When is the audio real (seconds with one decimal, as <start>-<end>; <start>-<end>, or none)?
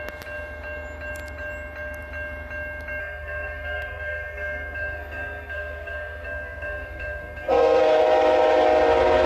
0.0-3.0; 8.0-9.3